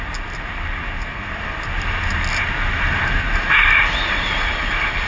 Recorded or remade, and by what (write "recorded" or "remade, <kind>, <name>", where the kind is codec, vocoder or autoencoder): recorded